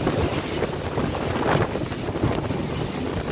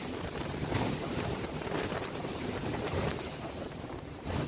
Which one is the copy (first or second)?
second